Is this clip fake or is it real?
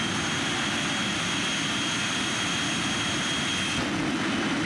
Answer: real